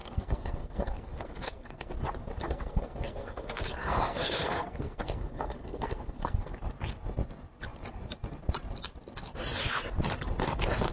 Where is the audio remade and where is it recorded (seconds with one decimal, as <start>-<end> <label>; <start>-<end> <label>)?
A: 0.0-1.9 remade; 1.9-2.4 recorded; 2.4-6.5 remade; 6.5-10.9 recorded